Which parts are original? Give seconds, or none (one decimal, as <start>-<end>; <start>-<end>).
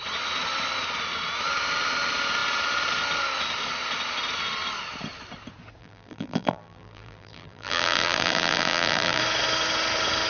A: 0.0-5.8; 9.2-10.3